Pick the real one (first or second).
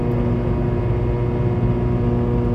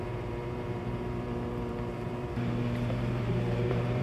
first